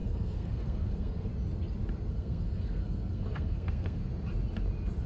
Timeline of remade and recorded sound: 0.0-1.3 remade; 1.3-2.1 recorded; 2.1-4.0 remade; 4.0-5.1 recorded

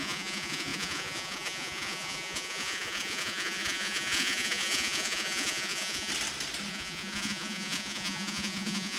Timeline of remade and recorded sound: 0.0-6.1 remade; 6.1-6.7 recorded; 6.7-9.0 remade

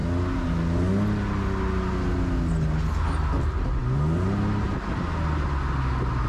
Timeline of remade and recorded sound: 0.0-6.3 recorded

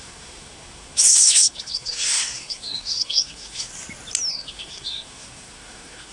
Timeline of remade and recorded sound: 0.0-3.7 remade; 3.7-4.3 recorded; 4.3-6.1 remade

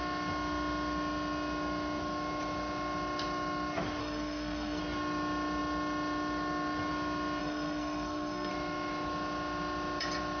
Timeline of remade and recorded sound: 0.0-4.0 recorded; 4.0-4.8 remade; 4.8-7.4 recorded; 7.4-8.5 remade; 8.5-10.4 recorded

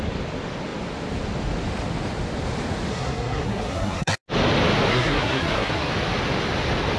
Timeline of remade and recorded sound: 0.0-2.9 recorded; 2.9-4.2 remade; 4.2-4.9 recorded; 4.9-5.9 remade; 5.9-7.0 recorded

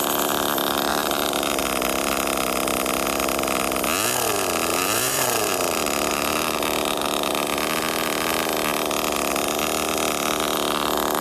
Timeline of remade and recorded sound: 0.0-0.9 recorded; 0.9-1.6 remade; 1.6-4.7 recorded; 4.7-7.3 remade; 7.3-11.2 recorded